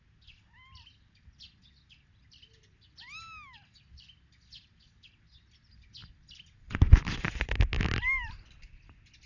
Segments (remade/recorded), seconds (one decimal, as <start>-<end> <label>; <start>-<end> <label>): 0.0-9.3 recorded